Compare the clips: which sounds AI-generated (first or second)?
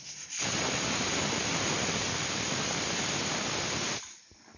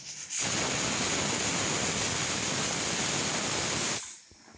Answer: first